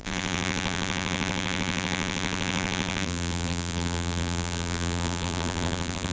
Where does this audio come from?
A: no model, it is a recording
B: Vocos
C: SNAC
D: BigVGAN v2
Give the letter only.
D